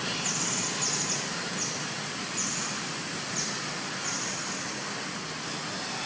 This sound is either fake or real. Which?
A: real